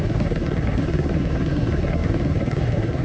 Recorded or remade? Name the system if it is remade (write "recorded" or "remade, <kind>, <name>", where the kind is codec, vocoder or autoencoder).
remade, codec, SNAC